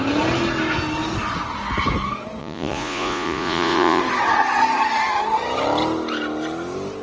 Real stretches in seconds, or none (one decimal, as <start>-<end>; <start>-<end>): 0.0-2.4; 4.0-7.0